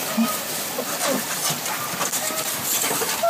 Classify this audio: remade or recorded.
remade